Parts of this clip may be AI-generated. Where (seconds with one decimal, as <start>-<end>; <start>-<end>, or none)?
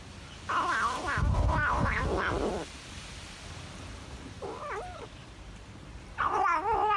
5.2-6.4